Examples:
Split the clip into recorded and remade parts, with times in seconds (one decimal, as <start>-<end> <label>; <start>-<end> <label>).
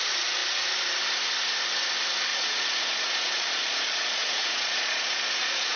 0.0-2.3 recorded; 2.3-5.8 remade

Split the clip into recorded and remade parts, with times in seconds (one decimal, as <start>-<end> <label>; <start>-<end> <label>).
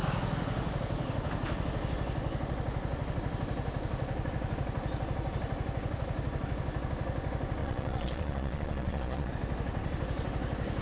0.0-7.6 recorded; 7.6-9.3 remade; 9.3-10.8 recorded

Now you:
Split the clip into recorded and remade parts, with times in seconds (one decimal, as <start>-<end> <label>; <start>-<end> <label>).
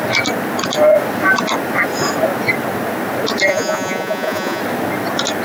0.0-3.5 recorded; 3.5-4.6 remade; 4.6-5.4 recorded